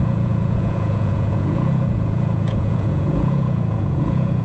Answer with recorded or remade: remade